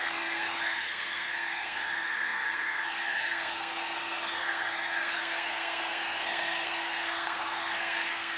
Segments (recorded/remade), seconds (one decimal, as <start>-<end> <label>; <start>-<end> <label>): 0.0-8.4 remade